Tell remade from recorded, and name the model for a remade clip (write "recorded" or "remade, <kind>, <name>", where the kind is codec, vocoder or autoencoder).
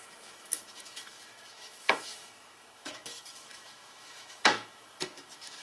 remade, autoencoder, DAC-VAE